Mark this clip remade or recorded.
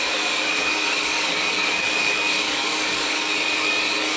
remade